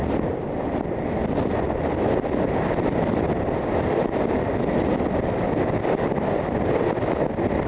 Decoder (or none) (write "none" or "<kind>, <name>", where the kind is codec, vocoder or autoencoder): none